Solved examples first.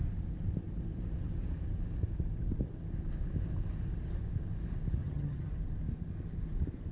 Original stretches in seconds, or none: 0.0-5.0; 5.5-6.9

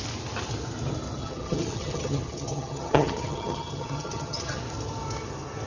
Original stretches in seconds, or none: 0.0-1.2; 4.6-5.7

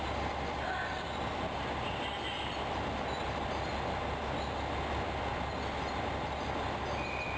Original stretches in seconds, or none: 0.0-7.4

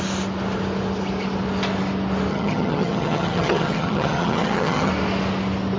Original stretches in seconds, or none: 0.0-2.3; 4.9-5.8

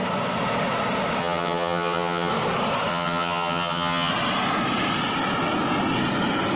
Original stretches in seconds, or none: 0.0-1.2; 2.3-2.9; 4.1-6.6

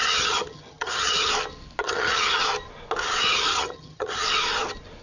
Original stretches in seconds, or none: 1.3-1.8; 2.4-3.5; 4.2-5.0